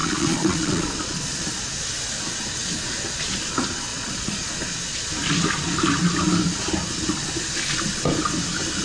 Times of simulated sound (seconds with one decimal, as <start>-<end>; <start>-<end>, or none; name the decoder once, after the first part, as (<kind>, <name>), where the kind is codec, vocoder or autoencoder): 0.0-1.7 (vocoder, Vocos); 3.9-4.5